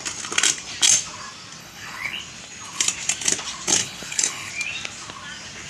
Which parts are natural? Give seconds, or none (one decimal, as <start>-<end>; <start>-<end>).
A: 0.0-1.6; 2.2-3.8; 4.5-5.7